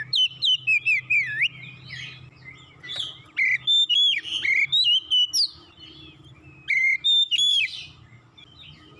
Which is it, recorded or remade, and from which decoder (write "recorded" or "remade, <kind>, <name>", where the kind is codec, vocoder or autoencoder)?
recorded